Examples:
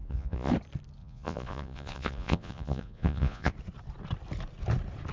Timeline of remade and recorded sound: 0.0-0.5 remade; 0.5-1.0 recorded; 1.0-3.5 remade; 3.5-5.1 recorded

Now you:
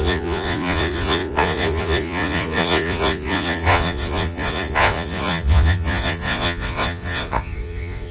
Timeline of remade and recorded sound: 0.0-8.1 remade

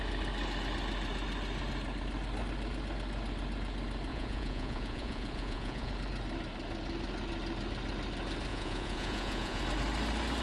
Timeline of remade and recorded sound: 0.0-4.1 recorded; 4.1-5.9 remade; 5.9-8.5 recorded; 8.5-9.6 remade; 9.6-10.4 recorded

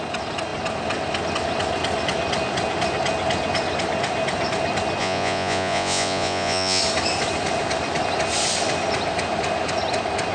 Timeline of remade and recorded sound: 0.0-5.0 recorded; 5.0-6.8 remade; 6.8-10.3 recorded

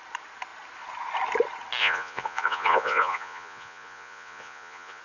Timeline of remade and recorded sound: 0.0-1.8 recorded; 1.8-5.0 remade

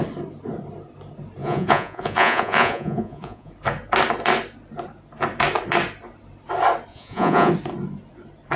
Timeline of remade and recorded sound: 0.0-1.4 recorded; 1.4-3.5 remade; 3.5-6.9 recorded; 6.9-7.5 remade; 7.5-8.6 recorded